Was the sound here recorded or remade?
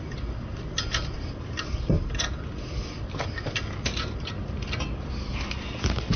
recorded